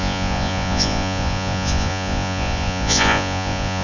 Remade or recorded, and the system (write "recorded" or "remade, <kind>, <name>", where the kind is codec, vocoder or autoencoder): remade, vocoder, Vocos